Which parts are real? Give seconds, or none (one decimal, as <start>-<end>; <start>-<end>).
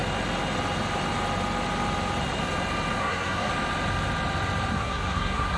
0.0-3.0; 3.5-4.7